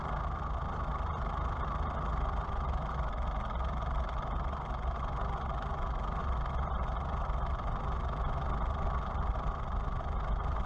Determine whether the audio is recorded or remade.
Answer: recorded